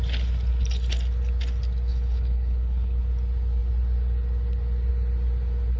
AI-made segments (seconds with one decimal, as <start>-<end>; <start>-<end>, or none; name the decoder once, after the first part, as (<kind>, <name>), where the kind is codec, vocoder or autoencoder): 1.9-3.0 (codec, HILCodec)